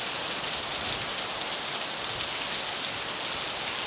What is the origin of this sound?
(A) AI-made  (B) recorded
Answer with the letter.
B